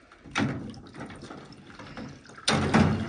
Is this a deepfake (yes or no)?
no